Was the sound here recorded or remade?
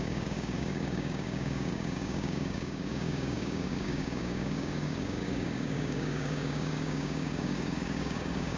remade